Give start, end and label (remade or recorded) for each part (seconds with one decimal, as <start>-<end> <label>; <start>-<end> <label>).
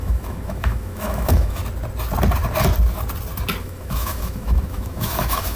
0.0-1.6 remade; 1.6-3.6 recorded; 3.6-5.6 remade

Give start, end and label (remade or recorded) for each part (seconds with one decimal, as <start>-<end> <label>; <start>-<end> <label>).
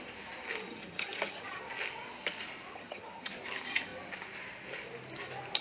0.0-0.7 recorded; 0.7-1.6 remade; 1.6-2.7 recorded; 2.7-3.3 remade; 3.3-5.6 recorded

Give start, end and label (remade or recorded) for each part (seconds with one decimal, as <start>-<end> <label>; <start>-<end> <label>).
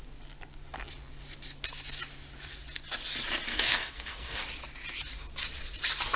0.0-3.5 recorded; 3.5-4.4 remade; 4.4-6.2 recorded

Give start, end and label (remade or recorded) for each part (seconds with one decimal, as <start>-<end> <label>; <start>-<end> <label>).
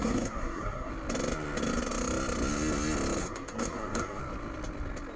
0.0-0.9 remade; 0.9-3.2 recorded; 3.2-4.2 remade; 4.2-5.2 recorded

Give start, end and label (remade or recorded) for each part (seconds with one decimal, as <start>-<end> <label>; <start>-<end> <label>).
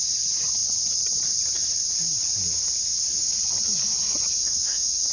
0.0-4.4 recorded; 4.4-5.1 remade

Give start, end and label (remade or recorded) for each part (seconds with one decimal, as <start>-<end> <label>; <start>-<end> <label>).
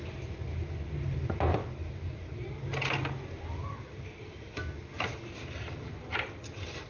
0.0-6.9 recorded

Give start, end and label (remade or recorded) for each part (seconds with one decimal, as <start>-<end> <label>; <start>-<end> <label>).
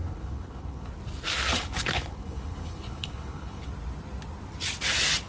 0.0-0.9 remade; 0.9-1.5 recorded; 1.5-3.7 remade; 3.7-5.3 recorded